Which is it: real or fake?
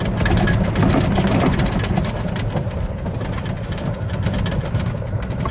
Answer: real